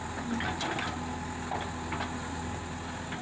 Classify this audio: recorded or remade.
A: recorded